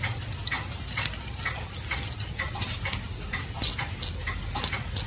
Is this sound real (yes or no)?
yes